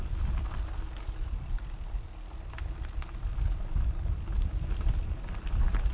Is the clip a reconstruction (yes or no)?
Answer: no